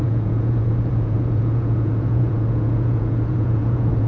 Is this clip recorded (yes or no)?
no